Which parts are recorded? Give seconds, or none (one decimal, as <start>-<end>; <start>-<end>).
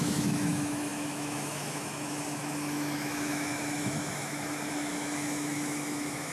none